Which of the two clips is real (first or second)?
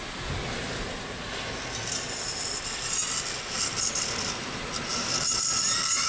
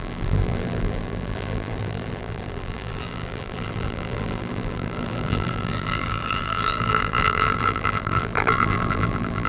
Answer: first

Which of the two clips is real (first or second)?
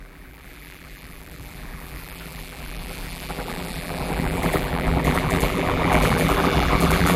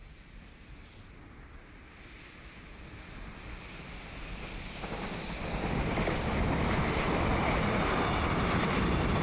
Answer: second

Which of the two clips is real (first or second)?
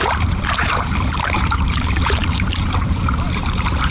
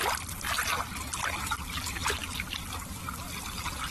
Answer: second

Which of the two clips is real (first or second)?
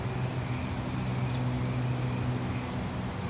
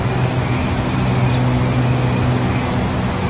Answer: second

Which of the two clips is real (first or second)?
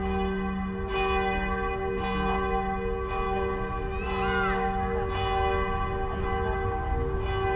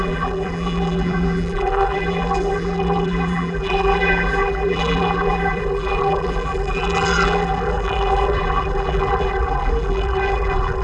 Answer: first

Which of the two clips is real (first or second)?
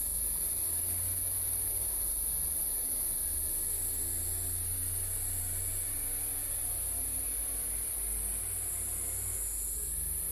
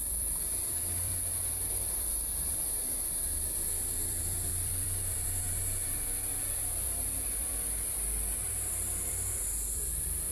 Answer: first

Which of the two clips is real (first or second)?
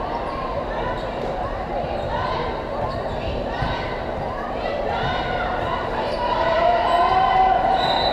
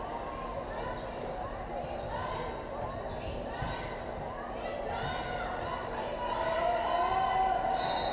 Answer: second